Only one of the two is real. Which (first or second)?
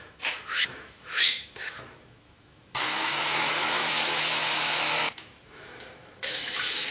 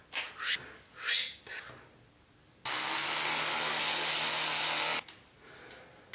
second